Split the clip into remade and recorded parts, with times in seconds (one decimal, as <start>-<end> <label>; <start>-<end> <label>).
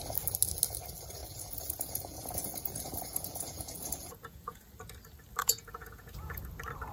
0.0-1.2 recorded; 1.2-4.7 remade; 4.7-5.4 recorded; 5.4-6.4 remade; 6.4-6.9 recorded